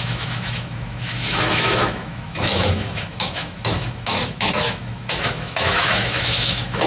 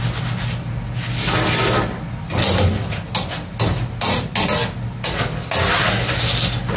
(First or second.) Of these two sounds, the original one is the second